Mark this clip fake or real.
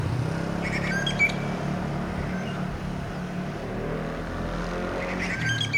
real